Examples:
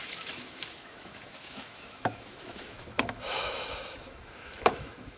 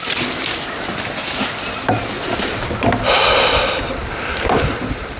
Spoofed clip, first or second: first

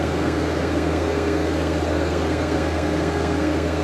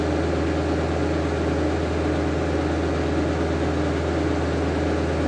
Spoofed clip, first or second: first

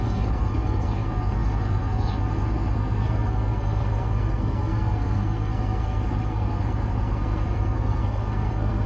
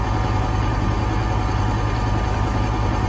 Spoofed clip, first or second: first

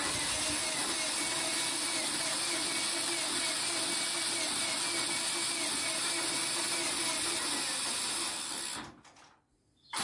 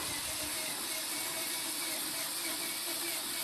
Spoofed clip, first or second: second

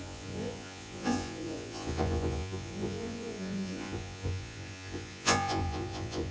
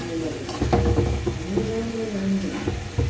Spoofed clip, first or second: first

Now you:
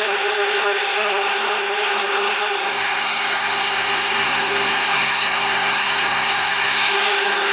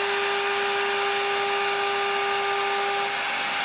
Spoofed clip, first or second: first